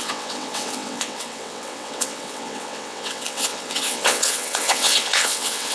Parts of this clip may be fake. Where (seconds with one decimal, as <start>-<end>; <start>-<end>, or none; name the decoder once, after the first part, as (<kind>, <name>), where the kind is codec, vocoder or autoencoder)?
0.0-5.7 (vocoder, WaveNeXt)